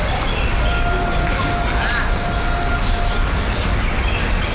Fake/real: real